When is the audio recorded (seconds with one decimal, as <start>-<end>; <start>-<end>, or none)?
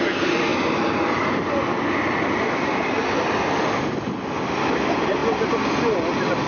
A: 0.0-6.5